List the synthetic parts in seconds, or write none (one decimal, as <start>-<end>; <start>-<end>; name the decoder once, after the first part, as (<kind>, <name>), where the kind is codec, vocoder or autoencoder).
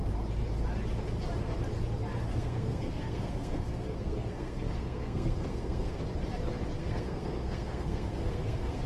2.3-6.0 (codec, SNAC); 6.8-8.9